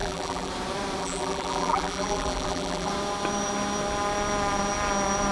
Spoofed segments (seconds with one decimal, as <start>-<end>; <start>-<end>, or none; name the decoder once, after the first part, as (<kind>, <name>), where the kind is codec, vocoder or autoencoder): 0.0-0.5 (vocoder, BigVGAN v2); 1.0-2.9